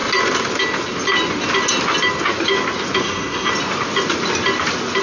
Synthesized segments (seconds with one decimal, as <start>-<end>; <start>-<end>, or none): 3.0-3.5